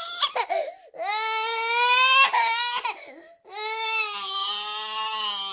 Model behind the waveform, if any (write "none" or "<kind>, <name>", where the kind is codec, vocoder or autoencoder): none